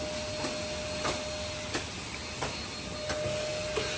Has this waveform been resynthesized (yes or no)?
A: no